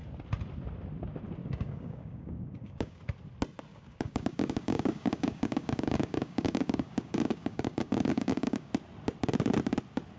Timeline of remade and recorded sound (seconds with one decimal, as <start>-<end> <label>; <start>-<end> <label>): 0.0-1.4 recorded; 1.4-3.0 remade; 3.0-3.7 recorded; 3.7-8.7 remade; 8.7-10.2 recorded

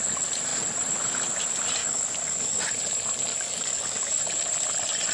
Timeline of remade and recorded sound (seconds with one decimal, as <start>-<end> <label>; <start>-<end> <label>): 0.0-1.8 recorded; 1.8-2.6 remade; 2.6-3.3 recorded; 3.3-4.2 remade; 4.2-5.1 recorded

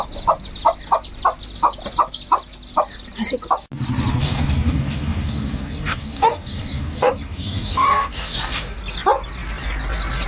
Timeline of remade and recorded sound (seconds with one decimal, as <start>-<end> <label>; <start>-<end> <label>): 0.0-4.2 recorded; 4.2-8.8 remade; 8.8-10.3 recorded

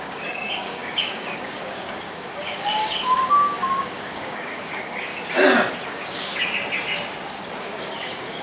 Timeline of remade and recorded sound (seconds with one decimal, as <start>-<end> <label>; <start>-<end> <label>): 0.0-5.1 remade; 5.1-5.8 recorded; 5.8-6.3 remade; 6.3-7.6 recorded; 7.6-8.4 remade

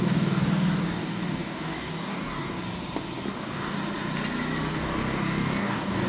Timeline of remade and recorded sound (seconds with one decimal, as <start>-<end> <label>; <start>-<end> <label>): 0.0-2.6 remade; 2.6-3.3 recorded; 3.3-3.8 remade; 3.8-4.7 recorded; 4.7-6.1 remade

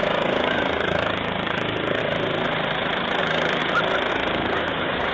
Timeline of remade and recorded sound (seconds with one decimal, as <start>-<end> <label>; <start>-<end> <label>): 0.0-2.0 remade; 2.0-3.2 recorded; 3.2-3.6 remade; 3.6-4.1 recorded; 4.1-5.1 remade

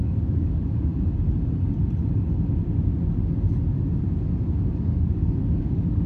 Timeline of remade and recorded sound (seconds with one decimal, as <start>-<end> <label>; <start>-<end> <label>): 0.0-0.9 remade; 0.9-4.6 recorded; 4.6-6.1 remade